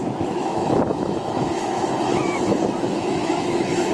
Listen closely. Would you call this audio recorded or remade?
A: remade